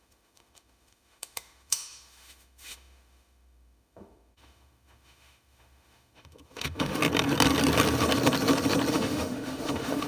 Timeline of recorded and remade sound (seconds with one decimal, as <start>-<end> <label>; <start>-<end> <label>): 0.0-7.0 remade; 7.0-8.9 recorded; 8.9-10.1 remade